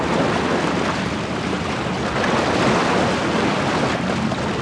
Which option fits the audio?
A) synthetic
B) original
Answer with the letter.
B